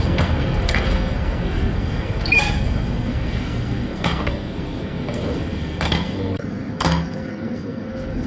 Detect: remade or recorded remade